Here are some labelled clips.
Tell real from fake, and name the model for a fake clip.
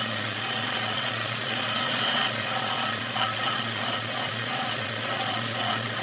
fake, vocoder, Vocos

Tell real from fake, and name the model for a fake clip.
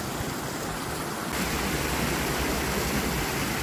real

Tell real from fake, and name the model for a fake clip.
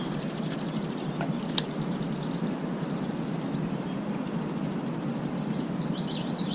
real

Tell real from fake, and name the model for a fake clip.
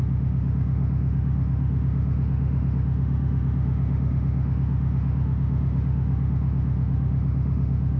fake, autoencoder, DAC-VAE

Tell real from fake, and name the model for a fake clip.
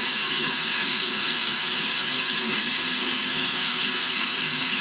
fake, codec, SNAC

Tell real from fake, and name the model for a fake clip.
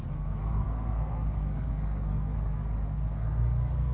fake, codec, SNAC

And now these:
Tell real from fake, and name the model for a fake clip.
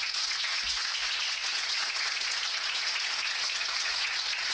fake, vocoder, Vocos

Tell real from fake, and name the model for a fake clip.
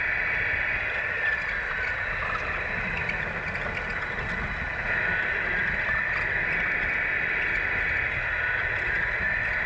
real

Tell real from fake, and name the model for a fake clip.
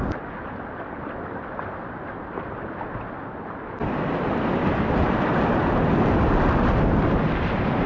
real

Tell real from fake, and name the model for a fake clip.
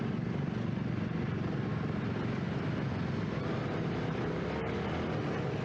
real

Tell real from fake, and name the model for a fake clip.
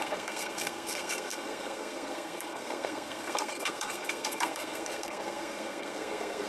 fake, codec, SNAC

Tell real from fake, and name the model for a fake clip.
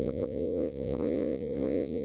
fake, vocoder, Vocos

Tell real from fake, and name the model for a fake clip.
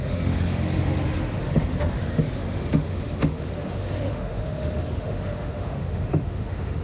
fake, autoencoder, DAC-VAE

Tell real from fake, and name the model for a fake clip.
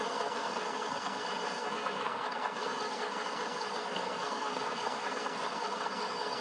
fake, codec, SNAC